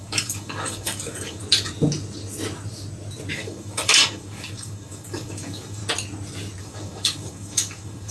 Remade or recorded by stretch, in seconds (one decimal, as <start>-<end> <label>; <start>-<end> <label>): 0.0-1.4 remade; 1.4-3.3 recorded; 3.3-5.8 remade; 5.8-6.6 recorded; 6.6-8.1 remade